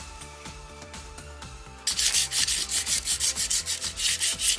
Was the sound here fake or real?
real